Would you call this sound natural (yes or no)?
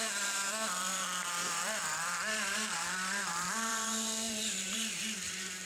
no